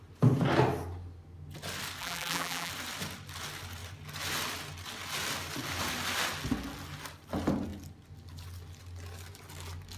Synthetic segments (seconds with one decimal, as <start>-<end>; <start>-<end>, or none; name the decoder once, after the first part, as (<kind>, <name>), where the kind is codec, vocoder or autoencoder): 2.0-2.7 (vocoder, BigVGAN v2)